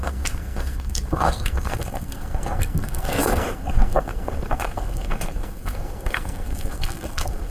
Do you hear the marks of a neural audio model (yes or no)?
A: yes